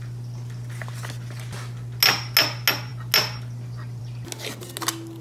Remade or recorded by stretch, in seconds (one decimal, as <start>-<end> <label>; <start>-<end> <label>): 0.0-5.2 recorded